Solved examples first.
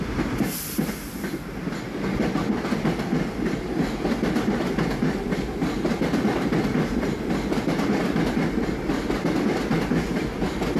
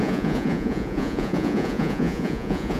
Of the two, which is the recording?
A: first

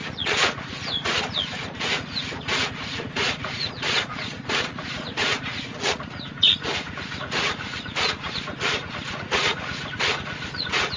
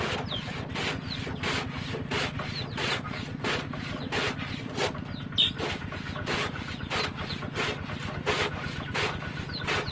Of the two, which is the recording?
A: second